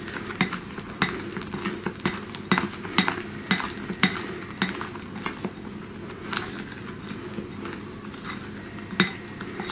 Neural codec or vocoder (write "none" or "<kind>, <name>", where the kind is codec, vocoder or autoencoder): none